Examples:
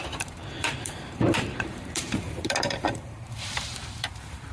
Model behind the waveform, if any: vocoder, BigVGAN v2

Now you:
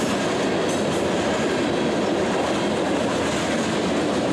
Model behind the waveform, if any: none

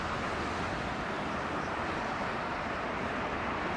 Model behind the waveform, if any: vocoder, BigVGAN v2